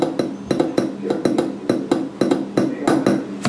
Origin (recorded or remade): recorded